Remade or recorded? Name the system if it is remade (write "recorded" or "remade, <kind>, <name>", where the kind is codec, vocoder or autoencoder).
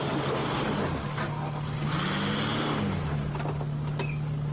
recorded